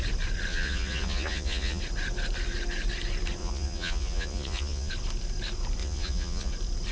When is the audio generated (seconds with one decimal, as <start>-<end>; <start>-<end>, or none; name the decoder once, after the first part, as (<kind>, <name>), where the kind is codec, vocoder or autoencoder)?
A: 0.5-1.8 (vocoder, Vocos); 3.4-4.9; 5.8-6.5